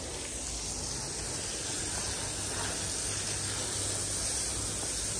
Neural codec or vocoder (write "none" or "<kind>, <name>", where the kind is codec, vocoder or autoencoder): none